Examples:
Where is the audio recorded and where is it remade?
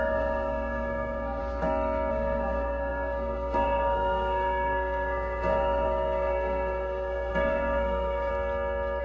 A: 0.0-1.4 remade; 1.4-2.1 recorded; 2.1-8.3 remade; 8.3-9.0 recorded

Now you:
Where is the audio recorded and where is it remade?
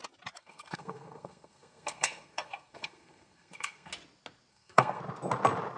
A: 0.0-0.4 recorded; 0.4-3.9 remade; 3.9-4.5 recorded; 4.5-5.0 remade; 5.0-5.8 recorded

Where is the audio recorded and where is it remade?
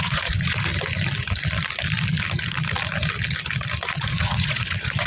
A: 0.0-0.7 remade; 0.7-3.8 recorded; 3.8-5.1 remade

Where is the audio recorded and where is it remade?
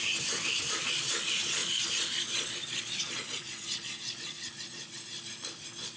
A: 0.0-0.7 recorded; 0.7-6.0 remade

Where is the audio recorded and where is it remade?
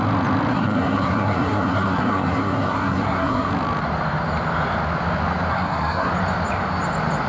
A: 0.0-0.5 recorded; 0.5-3.5 remade; 3.5-5.5 recorded; 5.5-6.1 remade; 6.1-7.3 recorded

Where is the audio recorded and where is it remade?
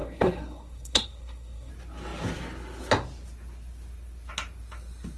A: 0.0-1.7 remade; 1.7-5.2 recorded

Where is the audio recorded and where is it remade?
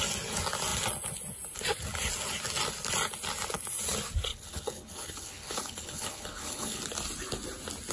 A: 0.0-4.3 recorded; 4.3-6.8 remade; 6.8-7.9 recorded